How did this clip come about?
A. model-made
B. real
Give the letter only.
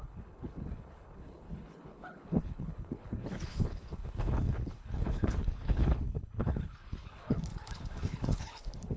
A